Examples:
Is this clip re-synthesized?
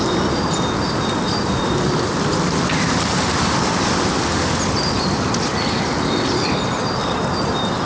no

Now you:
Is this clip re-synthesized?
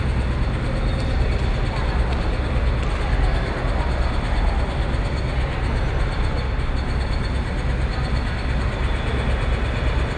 no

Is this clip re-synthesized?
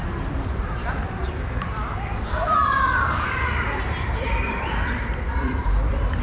yes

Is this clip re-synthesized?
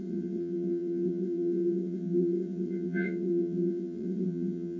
yes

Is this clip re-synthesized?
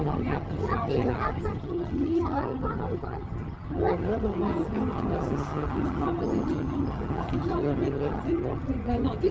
yes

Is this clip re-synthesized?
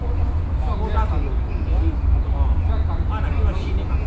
no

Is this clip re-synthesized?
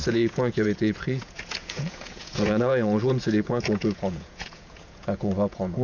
yes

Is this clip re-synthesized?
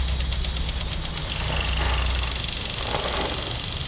no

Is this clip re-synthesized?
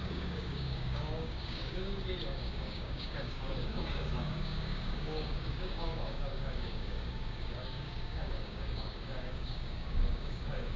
yes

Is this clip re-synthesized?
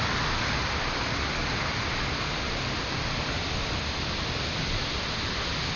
no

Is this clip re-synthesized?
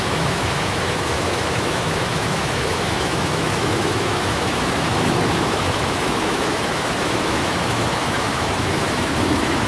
yes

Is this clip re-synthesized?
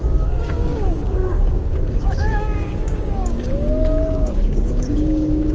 yes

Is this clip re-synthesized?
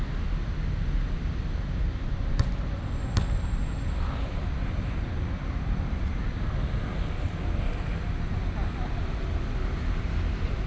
no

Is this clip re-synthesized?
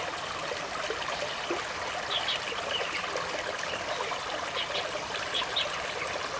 no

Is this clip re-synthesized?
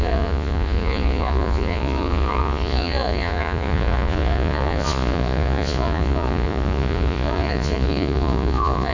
yes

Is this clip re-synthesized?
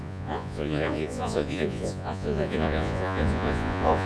yes